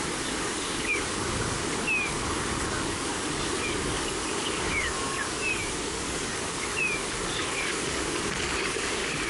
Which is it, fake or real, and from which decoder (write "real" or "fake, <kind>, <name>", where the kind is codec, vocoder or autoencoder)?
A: fake, codec, DAC